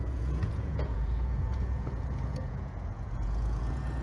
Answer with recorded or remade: remade